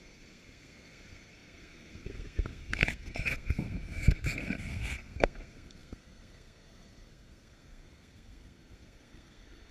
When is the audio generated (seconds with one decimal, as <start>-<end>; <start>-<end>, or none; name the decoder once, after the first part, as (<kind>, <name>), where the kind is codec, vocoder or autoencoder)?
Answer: 0.0-9.7 (codec, SNAC)